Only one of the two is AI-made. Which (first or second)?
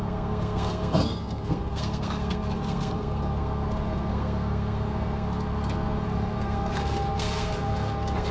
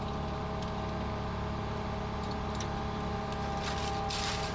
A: first